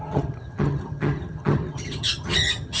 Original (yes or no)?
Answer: no